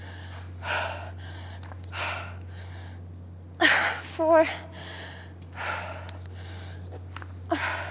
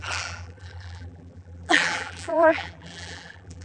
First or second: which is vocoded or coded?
second